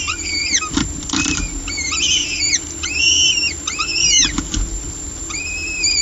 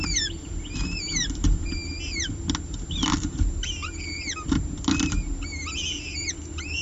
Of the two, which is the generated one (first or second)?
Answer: first